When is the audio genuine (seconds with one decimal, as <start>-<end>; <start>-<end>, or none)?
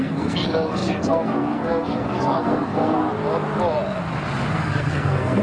3.0-4.5